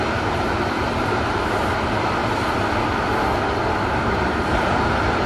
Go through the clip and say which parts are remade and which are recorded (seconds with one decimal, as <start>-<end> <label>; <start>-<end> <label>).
0.0-2.2 remade; 2.2-3.9 recorded; 3.9-5.3 remade